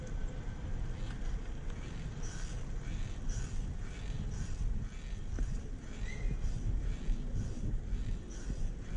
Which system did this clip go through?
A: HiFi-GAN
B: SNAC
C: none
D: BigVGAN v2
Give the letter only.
C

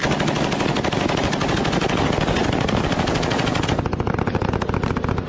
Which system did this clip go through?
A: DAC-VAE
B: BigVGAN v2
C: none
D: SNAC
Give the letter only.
C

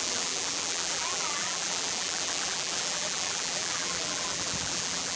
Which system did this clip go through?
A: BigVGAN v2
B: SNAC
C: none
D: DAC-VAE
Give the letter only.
A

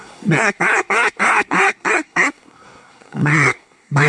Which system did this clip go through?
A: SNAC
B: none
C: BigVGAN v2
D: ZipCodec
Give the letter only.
A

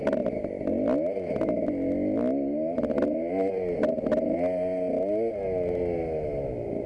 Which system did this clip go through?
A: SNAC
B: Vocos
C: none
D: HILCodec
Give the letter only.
C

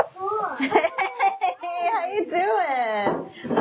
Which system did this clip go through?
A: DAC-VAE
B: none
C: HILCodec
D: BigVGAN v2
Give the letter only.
B